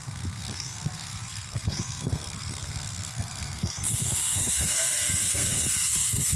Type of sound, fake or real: fake